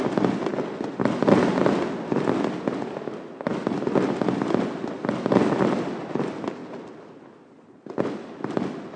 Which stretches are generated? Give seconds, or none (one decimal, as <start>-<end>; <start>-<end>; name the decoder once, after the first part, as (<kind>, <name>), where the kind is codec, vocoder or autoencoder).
none